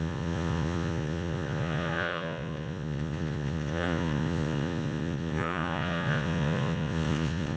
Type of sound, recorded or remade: remade